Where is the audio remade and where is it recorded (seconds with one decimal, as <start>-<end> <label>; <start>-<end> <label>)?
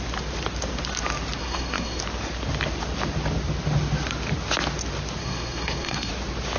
0.0-1.4 recorded; 1.4-2.0 remade; 2.0-5.2 recorded; 5.2-6.1 remade; 6.1-6.6 recorded